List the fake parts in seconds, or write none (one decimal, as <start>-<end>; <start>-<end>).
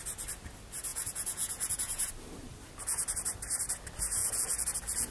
0.9-2.1; 4.2-5.1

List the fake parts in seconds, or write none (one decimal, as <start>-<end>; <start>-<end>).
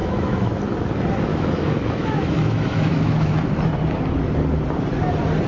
0.0-0.6; 1.3-3.5